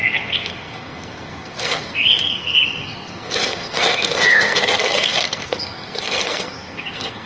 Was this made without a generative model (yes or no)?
no